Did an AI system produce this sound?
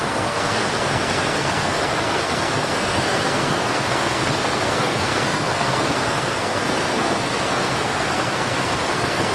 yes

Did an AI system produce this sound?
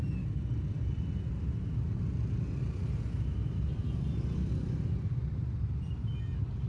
no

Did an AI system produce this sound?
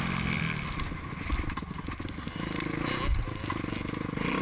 no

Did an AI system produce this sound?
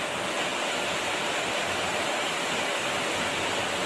no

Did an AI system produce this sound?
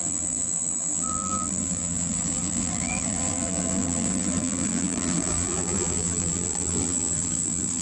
yes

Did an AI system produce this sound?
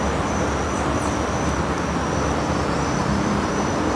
no